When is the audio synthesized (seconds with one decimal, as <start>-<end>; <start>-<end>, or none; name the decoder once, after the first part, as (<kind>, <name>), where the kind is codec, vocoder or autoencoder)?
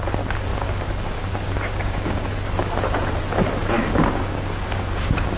0.5-2.2 (codec, DAC); 3.6-5.4